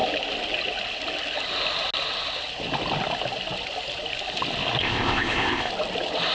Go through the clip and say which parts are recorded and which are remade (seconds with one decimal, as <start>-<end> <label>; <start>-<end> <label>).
0.0-4.8 recorded; 4.8-5.7 remade; 5.7-6.3 recorded